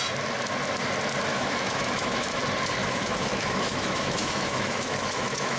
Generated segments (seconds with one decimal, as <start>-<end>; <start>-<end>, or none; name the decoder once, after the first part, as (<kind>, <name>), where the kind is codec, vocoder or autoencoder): 1.3-2.4 (autoencoder, DAC-VAE); 2.8-5.6